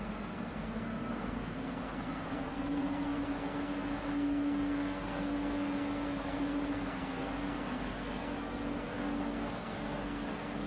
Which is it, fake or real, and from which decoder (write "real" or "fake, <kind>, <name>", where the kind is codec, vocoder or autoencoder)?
fake, codec, SNAC